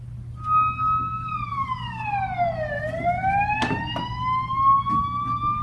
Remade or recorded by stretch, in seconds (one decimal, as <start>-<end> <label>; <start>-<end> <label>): 0.0-5.6 recorded